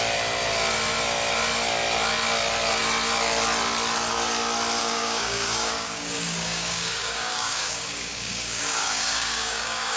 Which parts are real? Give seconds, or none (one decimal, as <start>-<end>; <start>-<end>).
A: 0.0-4.8